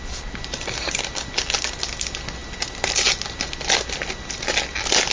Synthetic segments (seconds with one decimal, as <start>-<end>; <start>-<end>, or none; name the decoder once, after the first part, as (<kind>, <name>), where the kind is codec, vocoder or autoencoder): none

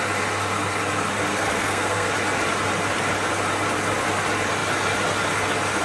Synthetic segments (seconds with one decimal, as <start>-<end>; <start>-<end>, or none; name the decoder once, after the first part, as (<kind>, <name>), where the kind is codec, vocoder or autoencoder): 1.3-2.1 (codec, SNAC)

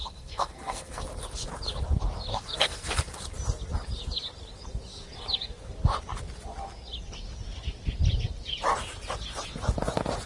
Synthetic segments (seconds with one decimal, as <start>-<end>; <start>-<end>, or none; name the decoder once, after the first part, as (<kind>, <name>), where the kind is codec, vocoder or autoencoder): 0.0-1.0 (codec, SNAC); 2.3-3.0

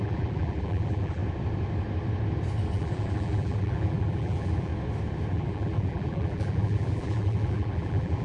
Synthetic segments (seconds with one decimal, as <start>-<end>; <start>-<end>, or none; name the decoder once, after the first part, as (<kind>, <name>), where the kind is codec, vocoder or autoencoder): 0.0-1.2 (vocoder, BigVGAN v2); 2.7-4.7; 5.3-8.2